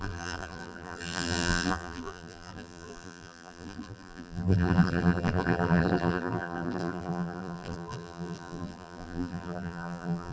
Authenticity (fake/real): fake